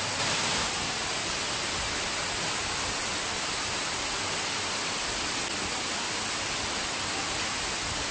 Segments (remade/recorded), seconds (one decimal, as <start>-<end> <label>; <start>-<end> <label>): 0.0-8.1 recorded